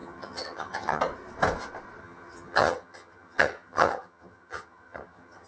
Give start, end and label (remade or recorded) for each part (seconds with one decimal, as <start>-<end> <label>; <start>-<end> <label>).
0.0-1.0 remade; 1.0-2.0 recorded; 2.0-5.5 remade